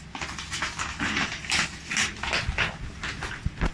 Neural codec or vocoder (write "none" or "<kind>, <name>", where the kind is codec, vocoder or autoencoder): none